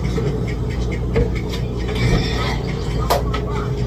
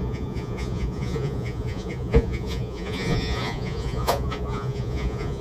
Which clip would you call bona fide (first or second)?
first